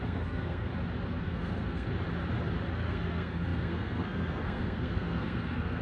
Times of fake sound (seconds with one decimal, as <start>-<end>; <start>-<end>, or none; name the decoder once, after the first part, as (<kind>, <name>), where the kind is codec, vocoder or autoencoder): 0.0-0.7 (codec, SNAC); 1.2-1.9; 2.7-5.8